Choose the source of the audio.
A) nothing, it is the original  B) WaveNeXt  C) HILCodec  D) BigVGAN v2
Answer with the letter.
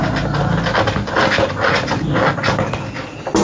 A